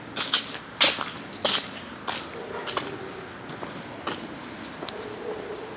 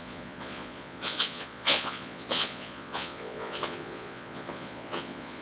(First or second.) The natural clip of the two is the first